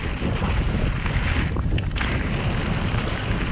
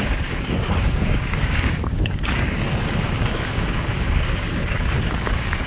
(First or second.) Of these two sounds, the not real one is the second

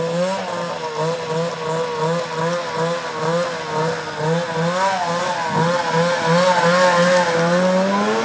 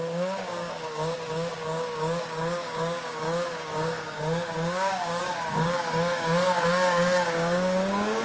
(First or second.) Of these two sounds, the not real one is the second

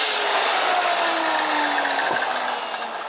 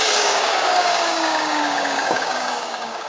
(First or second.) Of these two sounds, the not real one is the second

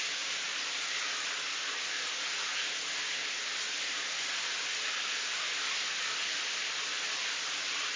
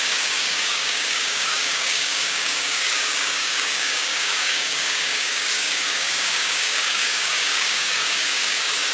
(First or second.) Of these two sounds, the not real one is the second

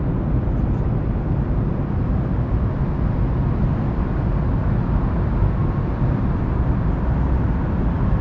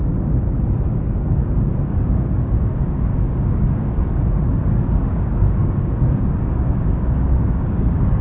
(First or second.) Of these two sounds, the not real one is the second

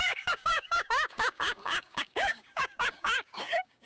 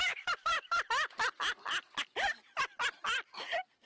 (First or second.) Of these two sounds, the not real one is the first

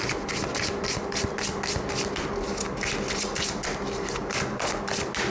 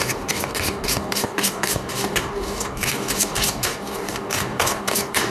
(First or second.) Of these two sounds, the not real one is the second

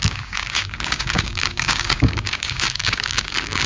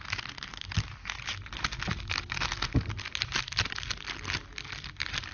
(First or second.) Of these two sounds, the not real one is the first